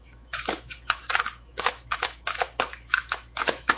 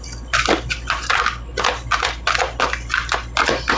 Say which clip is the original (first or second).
second